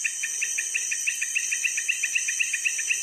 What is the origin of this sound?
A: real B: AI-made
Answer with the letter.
A